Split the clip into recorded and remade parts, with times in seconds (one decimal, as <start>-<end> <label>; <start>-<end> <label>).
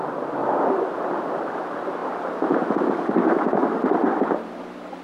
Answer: 0.0-5.0 recorded